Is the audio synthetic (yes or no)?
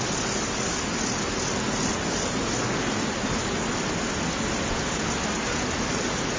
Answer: no